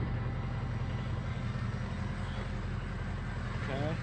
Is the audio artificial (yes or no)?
no